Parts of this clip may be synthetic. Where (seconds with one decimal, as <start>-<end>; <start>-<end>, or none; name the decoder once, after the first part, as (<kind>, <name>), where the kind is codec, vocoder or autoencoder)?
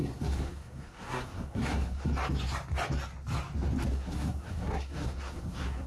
0.0-2.1 (codec, SNAC); 3.9-5.9